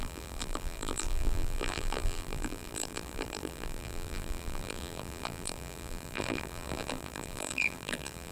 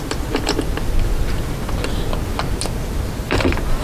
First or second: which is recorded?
second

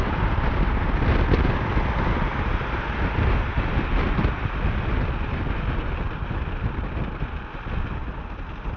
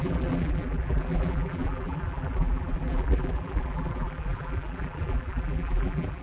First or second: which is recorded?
first